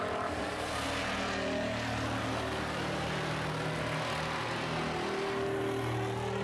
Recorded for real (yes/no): yes